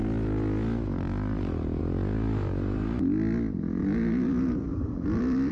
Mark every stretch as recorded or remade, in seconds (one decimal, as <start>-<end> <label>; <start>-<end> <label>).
0.0-3.8 recorded; 3.8-5.5 remade